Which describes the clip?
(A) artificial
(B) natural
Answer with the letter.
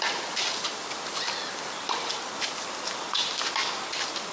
B